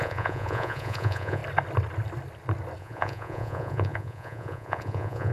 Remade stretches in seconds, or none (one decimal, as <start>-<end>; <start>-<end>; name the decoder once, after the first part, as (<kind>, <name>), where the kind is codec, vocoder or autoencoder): 0.0-1.4 (vocoder, Vocos); 2.8-5.3